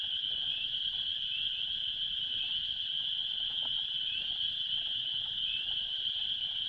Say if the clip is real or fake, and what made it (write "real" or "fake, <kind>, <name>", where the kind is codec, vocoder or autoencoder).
fake, vocoder, Vocos